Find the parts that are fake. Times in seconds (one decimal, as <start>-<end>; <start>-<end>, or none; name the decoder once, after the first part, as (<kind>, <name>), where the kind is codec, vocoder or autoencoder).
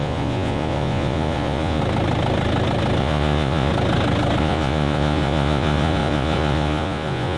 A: 0.0-1.8 (vocoder, Vocos); 3.0-3.7; 4.4-7.4